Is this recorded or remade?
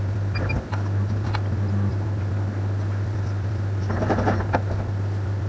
recorded